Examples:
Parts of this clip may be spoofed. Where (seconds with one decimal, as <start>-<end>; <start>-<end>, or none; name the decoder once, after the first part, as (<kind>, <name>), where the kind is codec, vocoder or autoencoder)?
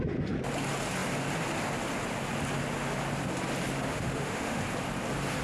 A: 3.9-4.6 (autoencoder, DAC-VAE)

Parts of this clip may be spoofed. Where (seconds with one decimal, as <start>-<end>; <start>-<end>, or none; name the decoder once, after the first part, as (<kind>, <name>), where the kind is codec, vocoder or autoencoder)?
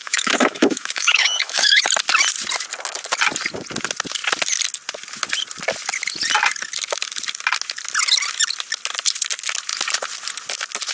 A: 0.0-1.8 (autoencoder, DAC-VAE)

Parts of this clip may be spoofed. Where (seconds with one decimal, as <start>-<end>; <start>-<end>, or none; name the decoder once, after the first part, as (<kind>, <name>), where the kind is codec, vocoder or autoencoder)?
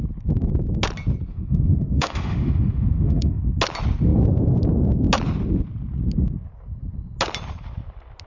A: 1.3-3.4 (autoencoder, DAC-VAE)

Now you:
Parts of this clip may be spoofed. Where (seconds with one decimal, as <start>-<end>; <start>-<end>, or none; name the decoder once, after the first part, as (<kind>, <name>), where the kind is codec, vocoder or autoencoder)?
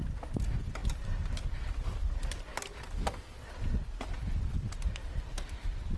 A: none